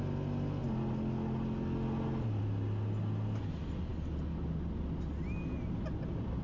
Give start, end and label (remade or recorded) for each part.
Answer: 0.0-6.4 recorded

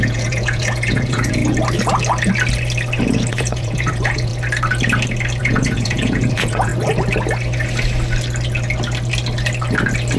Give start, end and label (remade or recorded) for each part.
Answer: 0.0-1.4 remade; 1.4-3.3 recorded; 3.3-4.3 remade; 4.3-5.4 recorded; 5.4-6.7 remade; 6.7-10.2 recorded

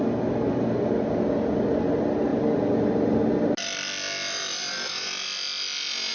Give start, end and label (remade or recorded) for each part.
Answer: 0.0-6.1 recorded

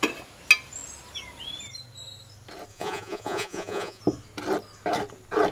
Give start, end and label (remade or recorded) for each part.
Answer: 0.0-2.7 recorded; 2.7-4.0 remade; 4.0-5.5 recorded

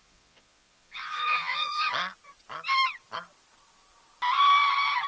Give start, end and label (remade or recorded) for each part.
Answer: 0.0-1.9 remade; 1.9-5.1 recorded

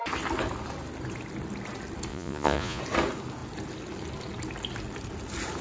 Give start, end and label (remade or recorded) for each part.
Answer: 0.0-2.1 recorded; 2.1-2.8 remade; 2.8-5.6 recorded